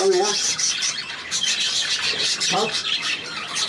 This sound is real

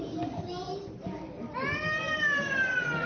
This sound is real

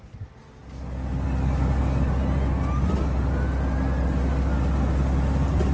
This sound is real